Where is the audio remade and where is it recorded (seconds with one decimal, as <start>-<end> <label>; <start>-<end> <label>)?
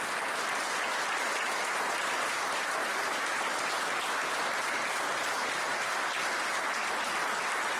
0.0-7.8 recorded